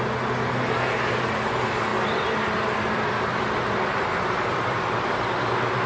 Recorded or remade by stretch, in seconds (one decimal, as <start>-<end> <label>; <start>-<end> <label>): 0.0-1.9 recorded; 1.9-5.4 remade; 5.4-5.9 recorded